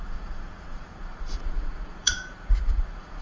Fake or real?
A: fake